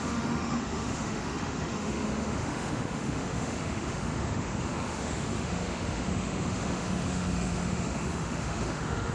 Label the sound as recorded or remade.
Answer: remade